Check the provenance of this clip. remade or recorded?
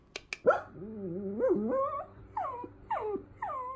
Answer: recorded